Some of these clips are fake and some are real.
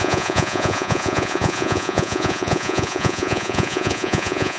fake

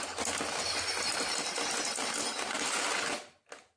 real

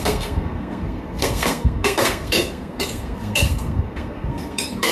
fake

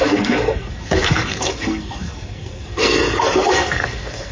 fake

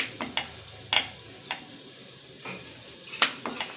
real